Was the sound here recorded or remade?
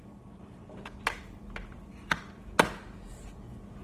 recorded